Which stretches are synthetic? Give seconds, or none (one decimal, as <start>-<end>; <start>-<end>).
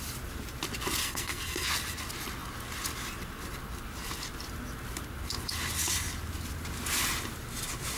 1.0-1.7